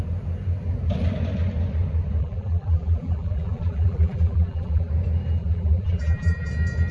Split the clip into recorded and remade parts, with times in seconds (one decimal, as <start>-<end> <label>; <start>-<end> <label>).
0.0-2.2 recorded; 2.2-4.9 remade; 4.9-5.4 recorded; 5.4-6.5 remade; 6.5-6.9 recorded

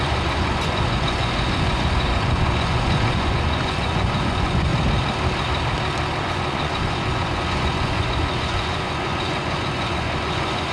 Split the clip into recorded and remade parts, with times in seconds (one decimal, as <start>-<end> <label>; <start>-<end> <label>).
0.0-4.7 remade; 4.7-6.2 recorded; 6.2-10.7 remade

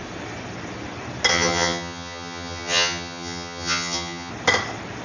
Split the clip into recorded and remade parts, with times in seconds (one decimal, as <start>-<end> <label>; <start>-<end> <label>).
0.0-1.3 recorded; 1.3-4.3 remade; 4.3-5.0 recorded

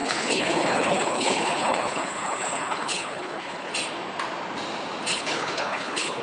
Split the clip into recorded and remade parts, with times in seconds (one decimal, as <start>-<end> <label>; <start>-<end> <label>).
0.0-3.7 remade; 3.7-5.1 recorded; 5.1-6.2 remade

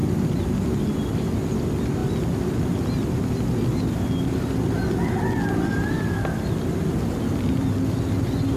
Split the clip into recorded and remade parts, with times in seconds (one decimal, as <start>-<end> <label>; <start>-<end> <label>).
0.0-8.6 recorded

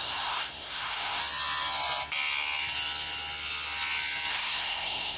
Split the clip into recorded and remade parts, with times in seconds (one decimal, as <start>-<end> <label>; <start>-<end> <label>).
0.0-1.2 remade; 1.2-4.3 recorded; 4.3-5.2 remade